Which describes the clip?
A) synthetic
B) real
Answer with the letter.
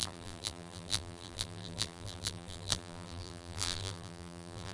A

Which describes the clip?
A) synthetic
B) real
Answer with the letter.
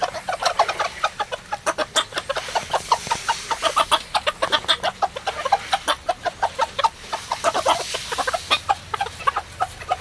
B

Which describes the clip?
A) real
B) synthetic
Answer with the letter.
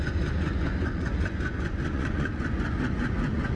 B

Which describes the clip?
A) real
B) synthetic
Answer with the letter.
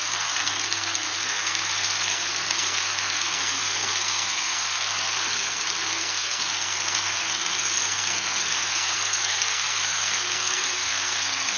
B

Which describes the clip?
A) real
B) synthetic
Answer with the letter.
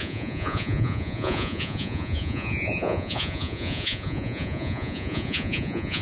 B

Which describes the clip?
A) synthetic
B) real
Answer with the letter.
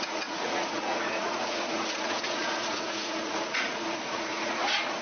A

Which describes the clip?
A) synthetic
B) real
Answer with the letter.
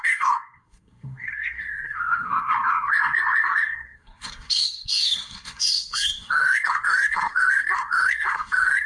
A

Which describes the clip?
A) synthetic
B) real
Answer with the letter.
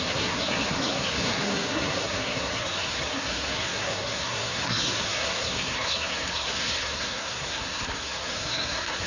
A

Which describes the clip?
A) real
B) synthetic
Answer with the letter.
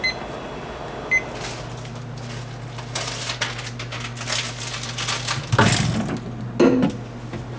A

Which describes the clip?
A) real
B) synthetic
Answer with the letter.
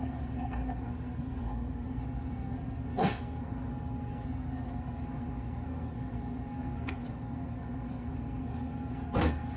B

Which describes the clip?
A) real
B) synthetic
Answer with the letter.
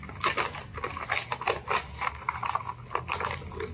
A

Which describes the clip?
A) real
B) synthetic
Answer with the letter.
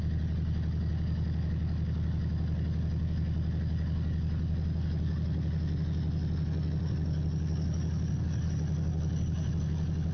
A